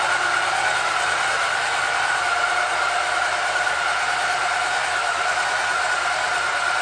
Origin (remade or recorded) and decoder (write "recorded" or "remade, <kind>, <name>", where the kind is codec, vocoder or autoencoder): recorded